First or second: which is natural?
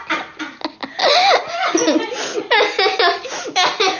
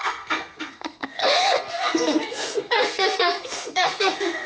first